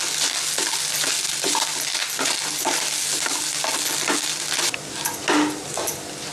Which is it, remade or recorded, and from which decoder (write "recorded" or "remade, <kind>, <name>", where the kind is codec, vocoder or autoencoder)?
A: recorded